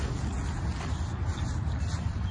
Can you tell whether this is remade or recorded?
recorded